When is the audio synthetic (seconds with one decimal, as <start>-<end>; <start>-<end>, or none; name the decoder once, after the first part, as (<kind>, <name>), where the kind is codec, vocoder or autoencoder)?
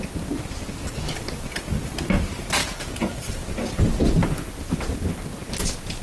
2.6-3.4 (vocoder, BigVGAN v2)